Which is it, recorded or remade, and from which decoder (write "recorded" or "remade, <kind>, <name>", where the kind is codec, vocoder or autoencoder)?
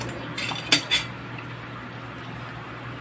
recorded